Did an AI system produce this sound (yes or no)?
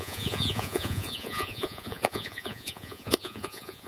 yes